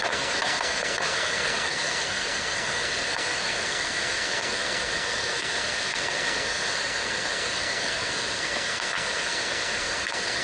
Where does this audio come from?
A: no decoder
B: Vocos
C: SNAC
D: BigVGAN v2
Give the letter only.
C